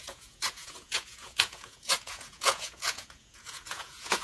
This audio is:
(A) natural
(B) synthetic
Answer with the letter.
B